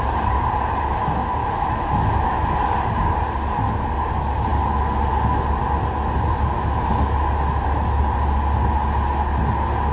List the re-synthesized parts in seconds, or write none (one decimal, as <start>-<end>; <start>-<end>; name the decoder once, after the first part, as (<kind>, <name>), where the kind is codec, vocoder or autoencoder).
1.4-2.4 (autoencoder, DAC-VAE)